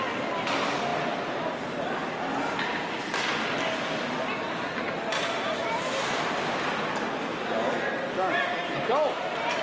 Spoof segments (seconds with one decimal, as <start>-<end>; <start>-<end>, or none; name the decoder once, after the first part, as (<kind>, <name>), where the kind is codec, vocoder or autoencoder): none

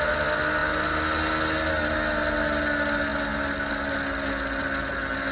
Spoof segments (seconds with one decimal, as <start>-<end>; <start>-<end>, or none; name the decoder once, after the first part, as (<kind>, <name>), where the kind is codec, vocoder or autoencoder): none